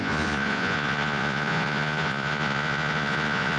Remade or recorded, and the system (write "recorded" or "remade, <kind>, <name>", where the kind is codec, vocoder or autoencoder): remade, vocoder, Vocos